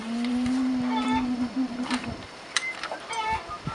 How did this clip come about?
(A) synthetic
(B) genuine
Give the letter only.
A